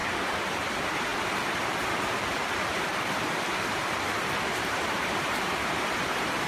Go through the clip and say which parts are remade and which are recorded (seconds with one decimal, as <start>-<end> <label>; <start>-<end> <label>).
0.0-0.5 recorded; 0.5-1.1 remade; 1.1-2.0 recorded; 2.0-2.9 remade; 2.9-3.8 recorded; 3.8-6.5 remade